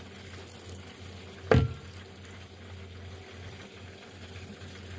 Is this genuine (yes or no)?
yes